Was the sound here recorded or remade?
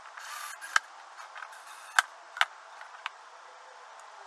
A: recorded